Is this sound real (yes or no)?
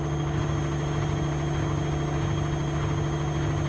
yes